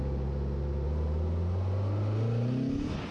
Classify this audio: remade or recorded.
recorded